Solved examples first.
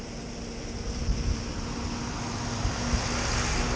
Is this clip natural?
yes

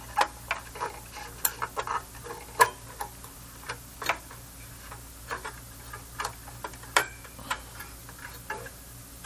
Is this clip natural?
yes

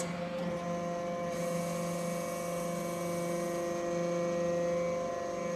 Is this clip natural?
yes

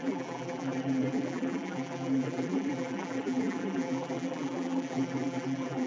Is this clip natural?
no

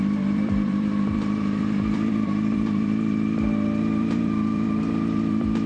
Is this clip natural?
no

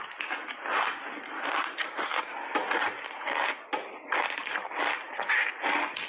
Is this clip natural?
yes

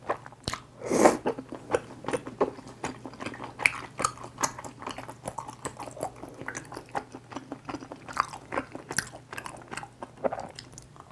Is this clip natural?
yes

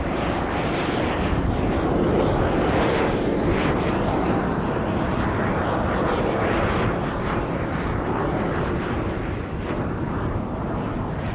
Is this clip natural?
yes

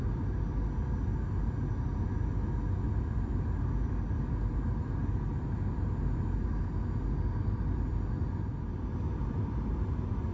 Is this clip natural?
yes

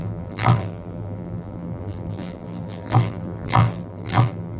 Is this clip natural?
no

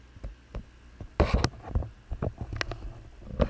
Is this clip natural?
yes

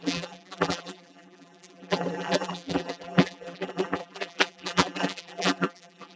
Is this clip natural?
no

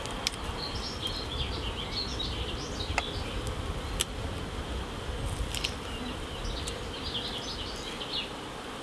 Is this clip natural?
yes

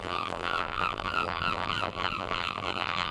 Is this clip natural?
no